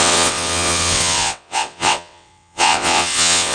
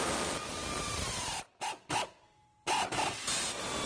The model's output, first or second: first